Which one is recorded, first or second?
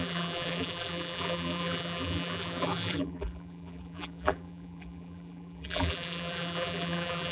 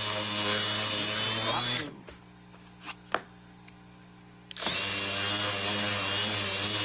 second